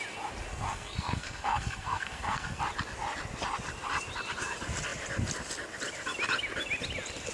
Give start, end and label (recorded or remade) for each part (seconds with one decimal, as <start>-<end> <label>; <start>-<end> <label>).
0.0-0.5 recorded; 0.5-2.6 remade; 2.6-7.3 recorded